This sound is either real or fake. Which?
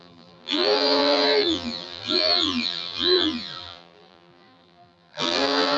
fake